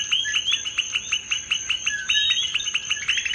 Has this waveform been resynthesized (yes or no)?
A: no